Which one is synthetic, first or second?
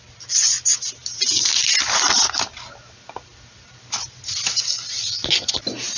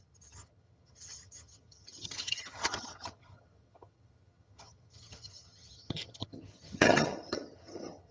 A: second